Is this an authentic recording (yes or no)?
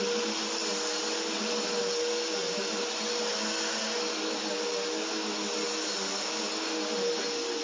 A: yes